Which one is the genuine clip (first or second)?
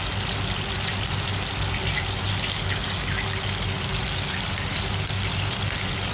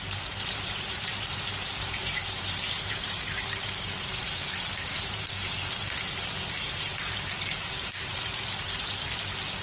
first